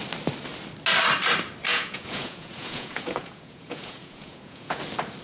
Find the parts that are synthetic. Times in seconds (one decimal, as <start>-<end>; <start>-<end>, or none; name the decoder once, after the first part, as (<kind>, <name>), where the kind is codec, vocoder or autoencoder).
1.7-4.8 (vocoder, Vocos)